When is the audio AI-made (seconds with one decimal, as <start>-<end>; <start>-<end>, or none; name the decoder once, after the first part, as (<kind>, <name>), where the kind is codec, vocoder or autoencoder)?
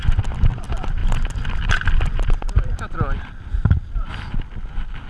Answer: none